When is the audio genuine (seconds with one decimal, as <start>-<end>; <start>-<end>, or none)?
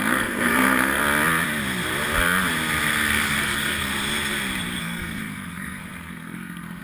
1.0-3.4; 3.9-4.8